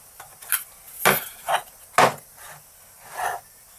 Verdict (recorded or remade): recorded